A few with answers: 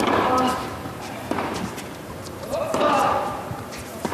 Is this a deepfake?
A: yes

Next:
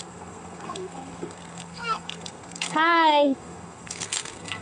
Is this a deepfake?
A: yes